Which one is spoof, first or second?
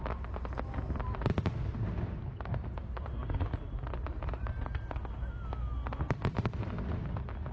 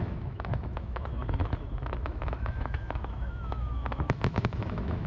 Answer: second